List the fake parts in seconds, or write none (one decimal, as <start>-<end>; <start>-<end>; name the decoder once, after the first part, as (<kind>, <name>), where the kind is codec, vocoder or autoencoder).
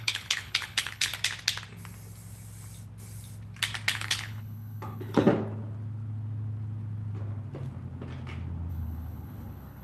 0.0-1.1 (codec, HILCodec); 3.9-5.3; 8.7-9.8